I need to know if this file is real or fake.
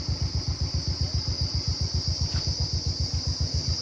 real